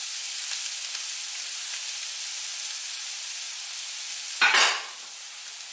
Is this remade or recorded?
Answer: recorded